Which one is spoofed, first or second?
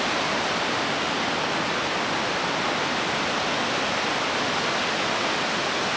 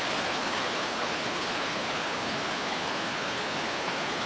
second